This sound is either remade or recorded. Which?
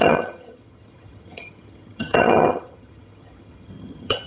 remade